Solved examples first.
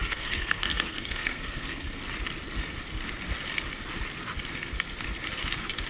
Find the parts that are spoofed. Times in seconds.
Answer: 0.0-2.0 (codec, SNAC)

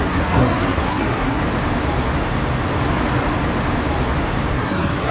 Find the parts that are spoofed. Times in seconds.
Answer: 0.0-1.4 (codec, SNAC); 4.5-5.1

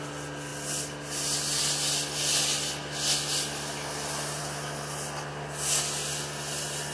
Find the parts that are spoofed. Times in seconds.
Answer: none

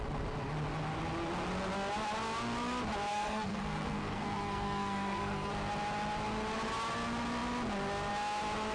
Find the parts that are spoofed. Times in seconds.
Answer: 3.1-5.5 (codec, SNAC)

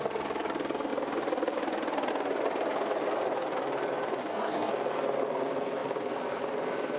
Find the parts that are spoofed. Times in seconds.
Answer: 4.2-4.7 (codec, SNAC)

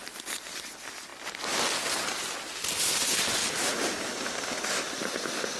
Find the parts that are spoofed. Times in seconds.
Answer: none

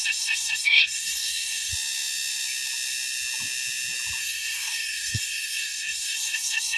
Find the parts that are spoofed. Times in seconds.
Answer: 0.0-1.7 (codec, SNAC); 4.2-6.8